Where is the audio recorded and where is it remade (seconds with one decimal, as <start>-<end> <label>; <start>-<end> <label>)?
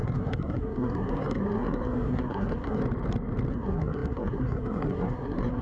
0.0-2.8 remade; 2.8-3.5 recorded; 3.5-5.6 remade